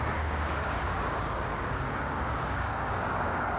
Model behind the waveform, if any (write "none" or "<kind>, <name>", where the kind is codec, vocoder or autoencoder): codec, DAC